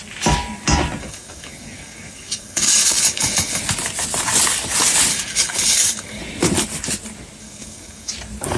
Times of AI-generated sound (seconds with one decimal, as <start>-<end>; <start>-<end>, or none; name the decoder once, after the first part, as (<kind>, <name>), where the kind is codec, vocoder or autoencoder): 1.0-3.6 (codec, DAC); 5.1-6.2; 7.4-8.1